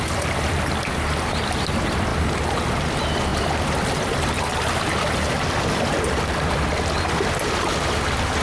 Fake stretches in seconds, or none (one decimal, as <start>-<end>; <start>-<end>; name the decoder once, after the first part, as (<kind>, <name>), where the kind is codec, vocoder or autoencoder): 2.1-2.7 (vocoder, BigVGAN v2); 3.3-7.3